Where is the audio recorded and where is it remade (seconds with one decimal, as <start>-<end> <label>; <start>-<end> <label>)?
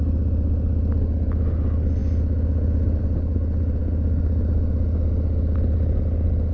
0.0-6.5 recorded